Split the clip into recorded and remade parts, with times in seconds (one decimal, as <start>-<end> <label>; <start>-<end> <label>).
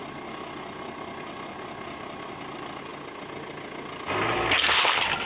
0.0-5.3 recorded